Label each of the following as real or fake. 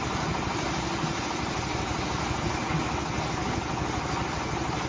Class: real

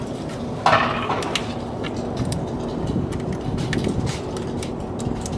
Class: real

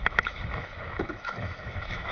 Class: fake